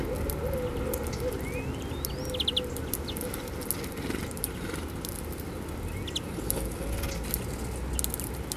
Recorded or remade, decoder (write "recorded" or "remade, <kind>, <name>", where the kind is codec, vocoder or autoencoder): recorded